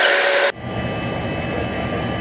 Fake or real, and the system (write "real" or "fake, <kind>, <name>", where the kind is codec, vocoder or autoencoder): real